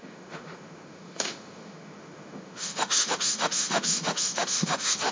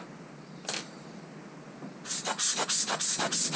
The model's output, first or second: first